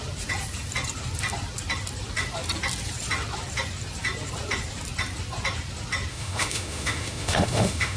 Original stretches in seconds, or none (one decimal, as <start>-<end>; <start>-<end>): 0.0-6.1